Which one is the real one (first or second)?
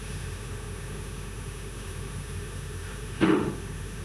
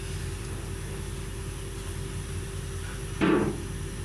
second